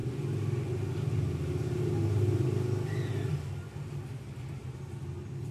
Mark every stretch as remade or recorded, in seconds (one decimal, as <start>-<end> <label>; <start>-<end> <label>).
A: 0.0-5.5 recorded